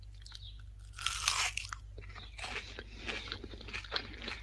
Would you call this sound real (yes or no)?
yes